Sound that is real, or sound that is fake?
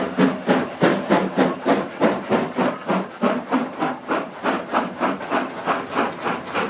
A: real